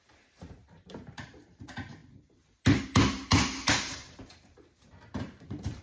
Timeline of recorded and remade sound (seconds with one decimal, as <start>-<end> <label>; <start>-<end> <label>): 0.0-2.0 remade; 2.0-3.7 recorded; 3.7-5.8 remade